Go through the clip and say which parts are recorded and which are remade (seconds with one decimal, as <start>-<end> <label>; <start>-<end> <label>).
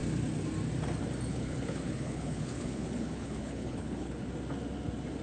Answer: 0.0-1.3 recorded; 1.3-4.3 remade; 4.3-5.2 recorded